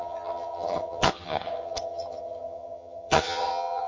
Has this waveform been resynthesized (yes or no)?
yes